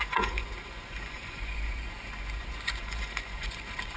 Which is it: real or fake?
fake